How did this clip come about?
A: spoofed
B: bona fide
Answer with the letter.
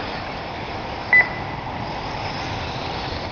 B